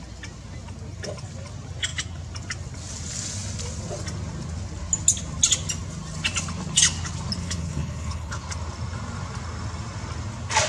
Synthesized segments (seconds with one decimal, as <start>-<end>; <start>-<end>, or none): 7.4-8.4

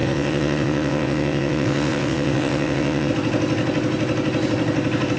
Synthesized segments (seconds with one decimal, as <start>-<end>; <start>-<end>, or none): 0.0-3.1

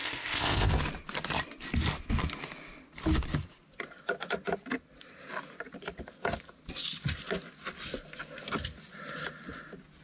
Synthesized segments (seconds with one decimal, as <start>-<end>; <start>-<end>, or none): 0.0-0.7

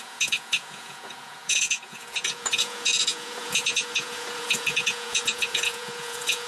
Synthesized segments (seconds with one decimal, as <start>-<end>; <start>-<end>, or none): 0.0-6.5

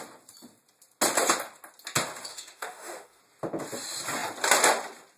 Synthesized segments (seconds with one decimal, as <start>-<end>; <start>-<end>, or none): 2.3-3.2

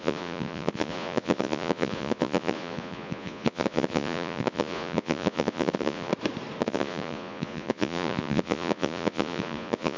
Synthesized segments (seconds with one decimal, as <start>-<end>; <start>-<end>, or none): 0.0-6.1; 6.6-10.0

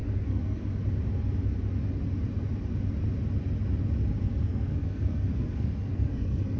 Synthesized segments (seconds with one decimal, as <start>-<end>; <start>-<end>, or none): 0.0-0.6; 4.2-6.6